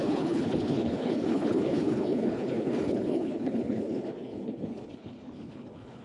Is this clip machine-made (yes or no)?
yes